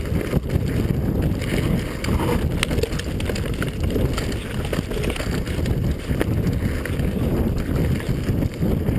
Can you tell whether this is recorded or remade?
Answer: recorded